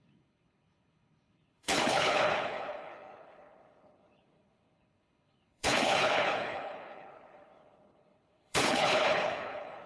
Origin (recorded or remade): remade